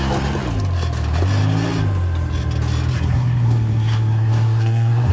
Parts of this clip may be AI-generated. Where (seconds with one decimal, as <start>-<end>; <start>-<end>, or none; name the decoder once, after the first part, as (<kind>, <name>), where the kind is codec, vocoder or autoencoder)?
2.9-5.1 (codec, SNAC)

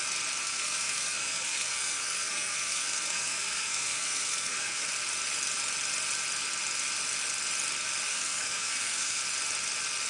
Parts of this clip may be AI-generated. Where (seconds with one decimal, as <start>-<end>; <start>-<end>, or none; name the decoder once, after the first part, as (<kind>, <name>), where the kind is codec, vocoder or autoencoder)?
0.4-4.9 (codec, SNAC); 8.1-9.2

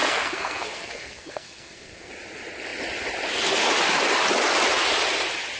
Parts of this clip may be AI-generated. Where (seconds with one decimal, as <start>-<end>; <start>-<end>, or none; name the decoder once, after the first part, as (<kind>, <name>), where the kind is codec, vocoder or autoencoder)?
0.0-2.1 (codec, SNAC)

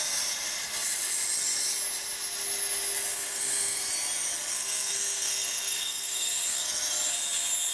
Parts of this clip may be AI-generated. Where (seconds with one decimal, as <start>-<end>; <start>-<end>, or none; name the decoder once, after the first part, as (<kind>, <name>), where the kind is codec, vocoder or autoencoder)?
3.1-3.9 (codec, SNAC); 4.5-6.6

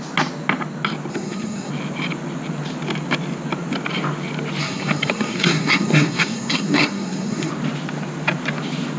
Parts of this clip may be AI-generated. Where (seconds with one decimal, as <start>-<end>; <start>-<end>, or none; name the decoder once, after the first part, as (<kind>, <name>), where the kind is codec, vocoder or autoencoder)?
1.1-1.7 (codec, SNAC); 4.6-7.5